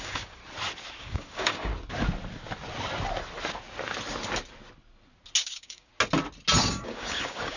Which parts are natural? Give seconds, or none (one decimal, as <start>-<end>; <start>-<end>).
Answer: 0.4-1.0; 1.7-5.4; 5.9-6.6